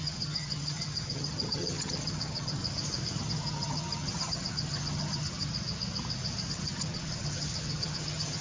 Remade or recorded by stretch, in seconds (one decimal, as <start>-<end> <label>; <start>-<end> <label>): 0.0-2.6 remade; 2.6-3.2 recorded; 3.2-5.5 remade; 5.5-6.5 recorded; 6.5-8.4 remade